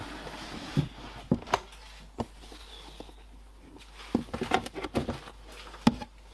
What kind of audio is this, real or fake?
real